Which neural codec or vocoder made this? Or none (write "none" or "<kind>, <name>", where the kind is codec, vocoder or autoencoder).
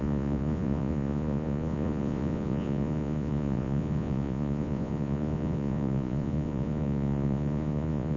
vocoder, Vocos